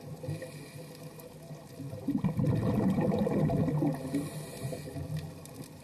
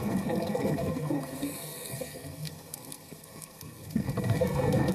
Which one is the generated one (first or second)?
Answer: second